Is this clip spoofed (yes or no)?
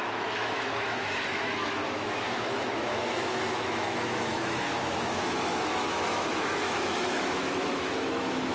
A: yes